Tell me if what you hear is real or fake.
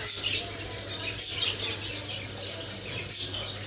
real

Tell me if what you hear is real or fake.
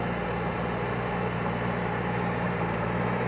real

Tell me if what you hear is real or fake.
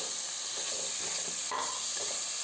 real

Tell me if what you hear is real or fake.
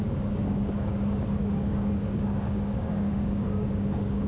fake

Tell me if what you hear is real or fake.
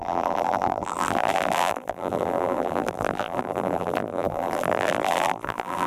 fake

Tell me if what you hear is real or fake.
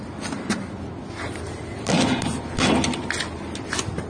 real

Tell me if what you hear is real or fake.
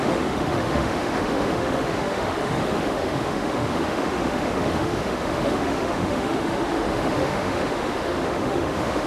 fake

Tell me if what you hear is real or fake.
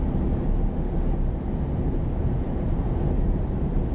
real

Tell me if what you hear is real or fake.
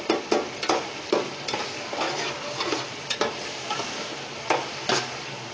real